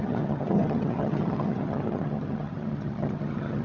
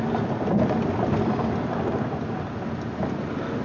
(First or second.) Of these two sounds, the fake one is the first